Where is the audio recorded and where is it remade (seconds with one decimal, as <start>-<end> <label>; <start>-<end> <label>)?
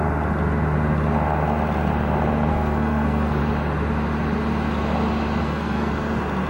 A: 0.0-2.5 recorded; 2.5-3.4 remade; 3.4-5.4 recorded; 5.4-5.9 remade; 5.9-6.5 recorded